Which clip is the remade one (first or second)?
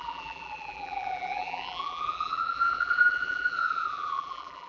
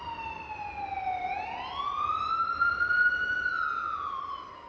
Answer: first